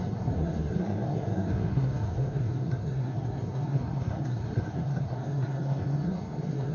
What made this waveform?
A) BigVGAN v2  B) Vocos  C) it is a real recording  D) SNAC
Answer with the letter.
D